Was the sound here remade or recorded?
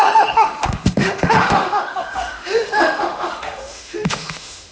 remade